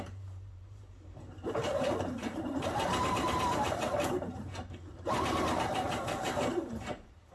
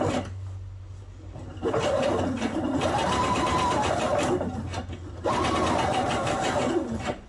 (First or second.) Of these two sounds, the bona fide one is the second